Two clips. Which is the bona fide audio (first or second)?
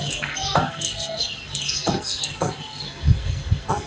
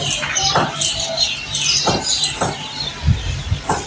second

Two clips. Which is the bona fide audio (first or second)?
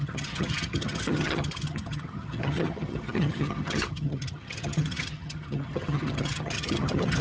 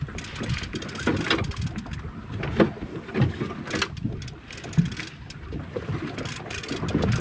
second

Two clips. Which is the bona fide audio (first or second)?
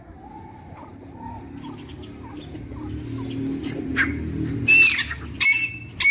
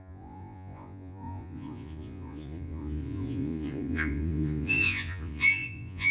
first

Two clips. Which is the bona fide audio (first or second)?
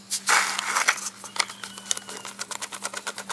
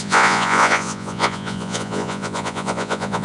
first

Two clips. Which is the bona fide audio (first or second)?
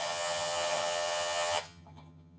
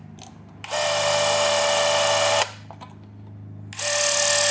second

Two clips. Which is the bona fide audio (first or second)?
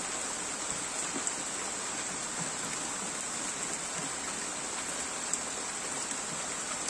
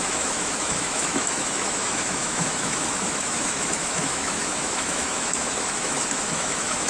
first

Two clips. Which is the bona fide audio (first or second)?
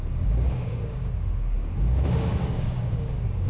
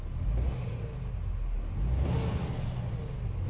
second